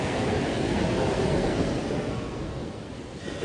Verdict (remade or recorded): remade